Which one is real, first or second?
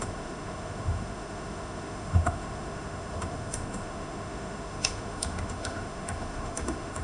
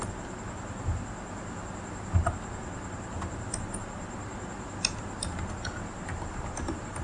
second